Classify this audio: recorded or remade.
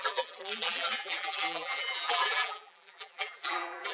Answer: remade